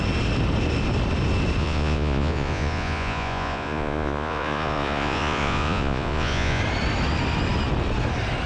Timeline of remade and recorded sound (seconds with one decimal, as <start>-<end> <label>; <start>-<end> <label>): 0.0-1.6 recorded; 1.6-6.6 remade; 6.6-8.5 recorded